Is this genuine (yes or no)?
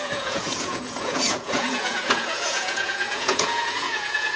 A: no